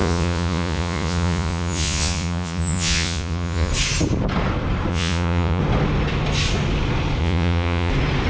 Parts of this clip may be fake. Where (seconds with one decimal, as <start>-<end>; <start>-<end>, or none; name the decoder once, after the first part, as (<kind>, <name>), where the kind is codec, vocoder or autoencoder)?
0.0-3.7 (vocoder, Vocos); 4.9-5.6; 7.2-7.9

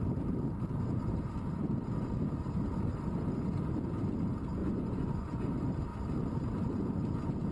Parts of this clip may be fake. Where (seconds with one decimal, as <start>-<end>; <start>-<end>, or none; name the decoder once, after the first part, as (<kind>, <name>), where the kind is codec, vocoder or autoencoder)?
4.6-5.5 (vocoder, Vocos)

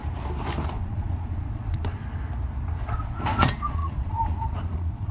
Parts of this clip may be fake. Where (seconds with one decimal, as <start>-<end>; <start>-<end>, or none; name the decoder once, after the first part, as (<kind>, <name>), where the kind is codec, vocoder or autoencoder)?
0.7-2.0 (vocoder, Vocos); 2.8-5.1

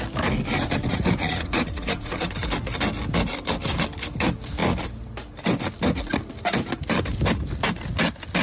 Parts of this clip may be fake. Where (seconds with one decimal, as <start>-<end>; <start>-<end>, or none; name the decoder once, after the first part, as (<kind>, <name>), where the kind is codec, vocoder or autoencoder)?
0.9-2.3 (vocoder, Vocos)

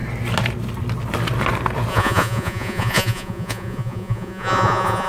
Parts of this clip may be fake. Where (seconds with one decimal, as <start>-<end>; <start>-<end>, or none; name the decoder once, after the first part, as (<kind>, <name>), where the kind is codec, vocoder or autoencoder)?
1.9-5.1 (vocoder, Vocos)

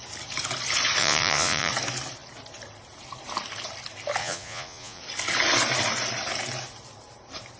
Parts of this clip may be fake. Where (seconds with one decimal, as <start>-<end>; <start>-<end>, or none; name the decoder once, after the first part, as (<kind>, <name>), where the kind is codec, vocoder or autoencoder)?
1.0-1.7 (vocoder, Vocos); 4.2-5.0

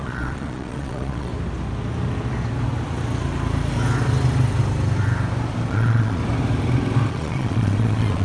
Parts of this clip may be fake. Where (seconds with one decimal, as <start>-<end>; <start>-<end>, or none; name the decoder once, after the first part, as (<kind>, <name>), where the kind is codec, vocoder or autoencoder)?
0.0-1.3 (vocoder, Vocos); 5.7-6.2; 7.1-8.2